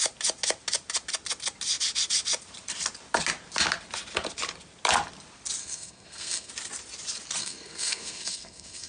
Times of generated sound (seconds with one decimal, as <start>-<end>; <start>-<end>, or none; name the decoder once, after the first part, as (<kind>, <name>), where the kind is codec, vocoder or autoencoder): 5.6-6.5 (codec, SNAC); 7.4-8.9